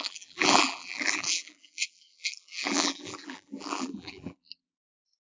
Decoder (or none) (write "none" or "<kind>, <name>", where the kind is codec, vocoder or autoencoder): vocoder, BigVGAN v2